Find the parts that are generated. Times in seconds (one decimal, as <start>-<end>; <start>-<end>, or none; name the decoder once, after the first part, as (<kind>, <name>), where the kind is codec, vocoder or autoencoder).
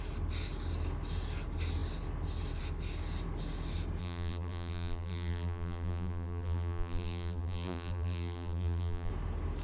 4.0-9.1 (vocoder, BigVGAN v2)